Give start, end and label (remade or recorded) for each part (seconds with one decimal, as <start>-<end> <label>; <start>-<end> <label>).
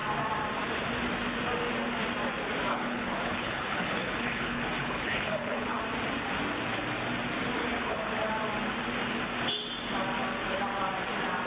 0.0-2.7 recorded; 2.7-5.8 remade; 5.8-7.6 recorded; 7.6-8.2 remade; 8.2-11.5 recorded